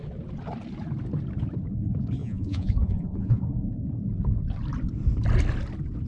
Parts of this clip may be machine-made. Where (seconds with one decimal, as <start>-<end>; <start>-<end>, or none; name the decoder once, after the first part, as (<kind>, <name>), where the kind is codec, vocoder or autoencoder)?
2.2-3.4 (vocoder, Vocos)